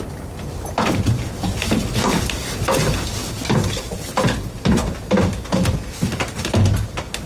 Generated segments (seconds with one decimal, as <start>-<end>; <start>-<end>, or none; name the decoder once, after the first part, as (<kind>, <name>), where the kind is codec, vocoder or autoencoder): none